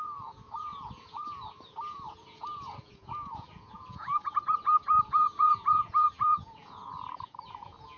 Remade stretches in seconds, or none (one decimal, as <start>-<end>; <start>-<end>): 0.0-8.0